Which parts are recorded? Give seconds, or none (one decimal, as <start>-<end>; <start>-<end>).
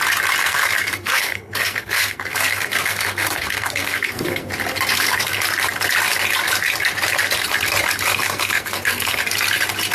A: 0.0-0.4; 4.5-4.9; 5.4-8.1; 9.2-9.9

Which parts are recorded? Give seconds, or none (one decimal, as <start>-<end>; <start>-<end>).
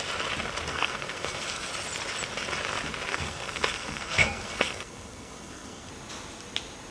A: 0.0-0.7; 1.7-3.1; 5.9-6.9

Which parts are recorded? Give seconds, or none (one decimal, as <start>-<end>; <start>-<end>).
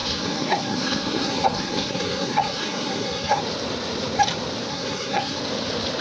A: 3.4-4.7; 5.4-6.0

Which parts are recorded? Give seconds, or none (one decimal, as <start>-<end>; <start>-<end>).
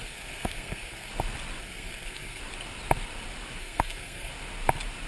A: 1.1-1.6; 2.4-3.6; 4.3-5.1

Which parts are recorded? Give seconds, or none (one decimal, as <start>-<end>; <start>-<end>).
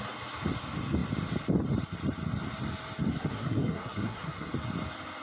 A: 0.0-3.1; 4.5-5.2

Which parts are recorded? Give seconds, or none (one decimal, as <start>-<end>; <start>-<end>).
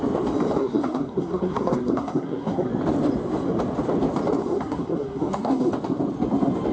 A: 0.0-0.6; 2.7-4.4; 5.7-6.7